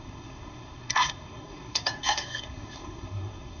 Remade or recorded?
remade